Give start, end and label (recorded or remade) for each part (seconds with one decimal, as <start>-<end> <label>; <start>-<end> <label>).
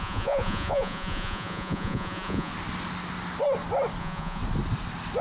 0.0-2.5 remade; 2.5-4.0 recorded; 4.0-4.4 remade; 4.4-5.2 recorded